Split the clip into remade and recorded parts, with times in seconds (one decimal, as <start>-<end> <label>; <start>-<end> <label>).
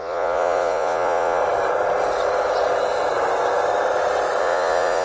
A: 0.0-1.4 remade; 1.4-4.4 recorded; 4.4-5.0 remade